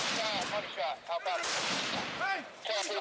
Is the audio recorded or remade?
remade